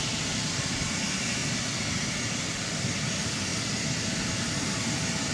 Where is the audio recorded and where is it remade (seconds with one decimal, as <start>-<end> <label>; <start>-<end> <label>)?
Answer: 0.0-5.3 recorded